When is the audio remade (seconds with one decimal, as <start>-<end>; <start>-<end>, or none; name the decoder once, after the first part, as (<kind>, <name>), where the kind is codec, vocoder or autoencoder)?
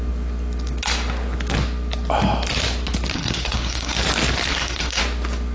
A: 3.1-4.0 (codec, SNAC); 4.5-5.0